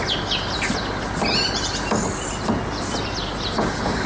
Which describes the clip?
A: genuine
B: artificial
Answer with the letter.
A